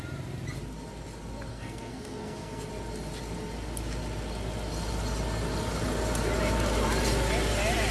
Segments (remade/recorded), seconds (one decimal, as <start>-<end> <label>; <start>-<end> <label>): 0.0-1.5 recorded; 1.5-2.7 remade; 2.7-7.9 recorded